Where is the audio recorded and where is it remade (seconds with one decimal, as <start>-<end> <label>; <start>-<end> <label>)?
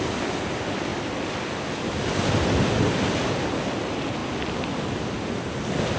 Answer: 0.0-0.9 remade; 0.9-2.2 recorded; 2.2-4.2 remade; 4.2-5.2 recorded; 5.2-6.0 remade